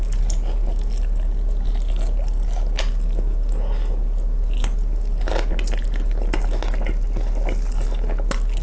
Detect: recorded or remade recorded